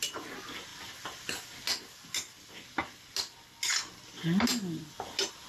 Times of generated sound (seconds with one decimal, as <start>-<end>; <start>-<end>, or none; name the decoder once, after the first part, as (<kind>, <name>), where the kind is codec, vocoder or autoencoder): none